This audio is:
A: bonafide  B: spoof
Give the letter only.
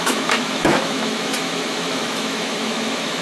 B